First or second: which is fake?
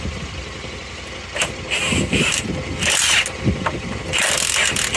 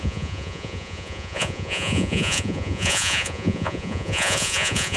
second